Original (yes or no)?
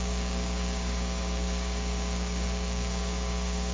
no